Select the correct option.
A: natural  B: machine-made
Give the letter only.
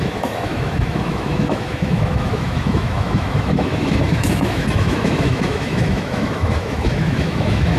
B